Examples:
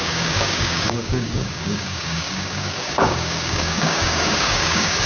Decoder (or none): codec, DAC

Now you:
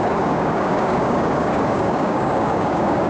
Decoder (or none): codec, DAC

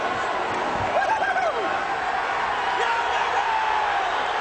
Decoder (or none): none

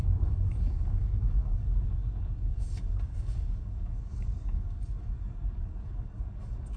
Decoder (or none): codec, DAC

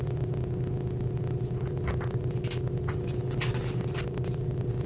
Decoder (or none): none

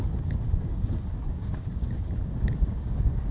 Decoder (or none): codec, DAC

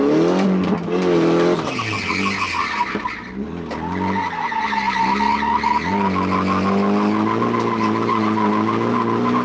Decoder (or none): none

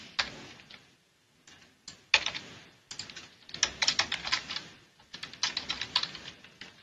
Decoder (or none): none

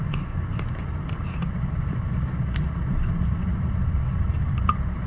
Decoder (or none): none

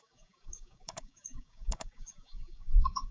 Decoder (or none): codec, DAC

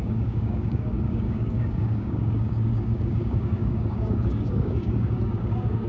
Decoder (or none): codec, DAC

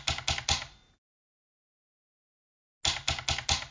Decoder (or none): none